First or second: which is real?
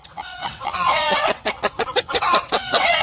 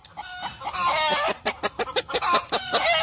second